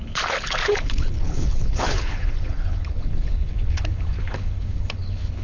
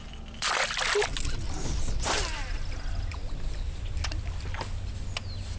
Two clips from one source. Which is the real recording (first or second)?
second